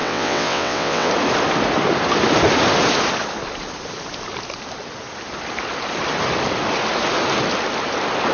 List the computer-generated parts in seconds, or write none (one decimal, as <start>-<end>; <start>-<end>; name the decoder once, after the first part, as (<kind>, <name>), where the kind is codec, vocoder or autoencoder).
0.0-1.1 (vocoder, WaveNeXt)